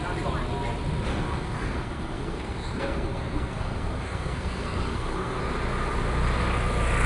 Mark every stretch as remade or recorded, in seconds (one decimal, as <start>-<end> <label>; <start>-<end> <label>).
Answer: 0.0-1.1 recorded; 1.1-5.4 remade; 5.4-7.1 recorded